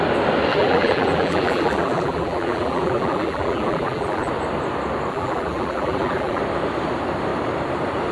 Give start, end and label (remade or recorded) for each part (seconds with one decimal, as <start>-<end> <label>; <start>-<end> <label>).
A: 0.0-0.5 recorded; 0.5-4.3 remade; 4.3-5.1 recorded; 5.1-6.4 remade; 6.4-8.1 recorded